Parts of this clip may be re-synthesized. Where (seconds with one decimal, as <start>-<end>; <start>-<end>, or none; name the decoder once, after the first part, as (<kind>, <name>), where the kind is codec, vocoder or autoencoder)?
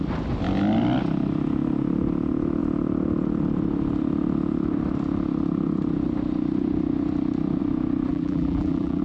8.1-9.0 (vocoder, BigVGAN v2)